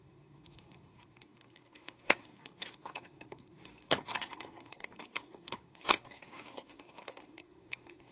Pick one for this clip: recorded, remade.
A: remade